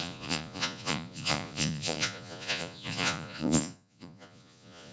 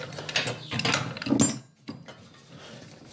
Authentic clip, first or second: second